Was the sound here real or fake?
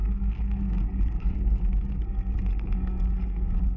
fake